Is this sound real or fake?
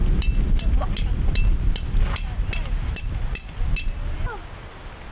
real